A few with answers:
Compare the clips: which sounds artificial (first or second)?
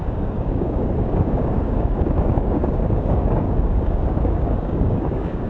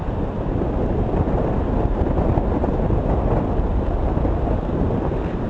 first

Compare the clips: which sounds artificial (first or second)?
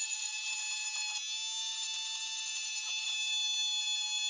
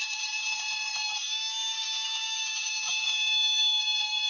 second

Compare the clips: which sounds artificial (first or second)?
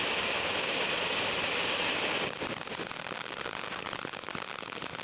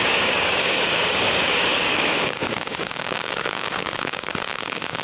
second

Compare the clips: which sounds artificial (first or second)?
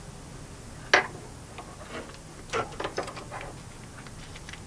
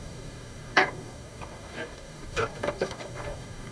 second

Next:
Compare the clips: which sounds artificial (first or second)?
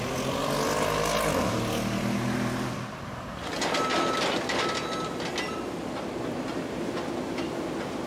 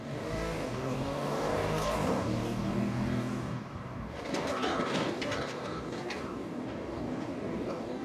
second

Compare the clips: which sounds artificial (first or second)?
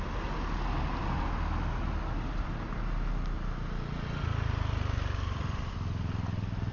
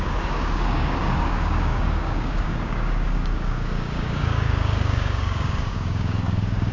second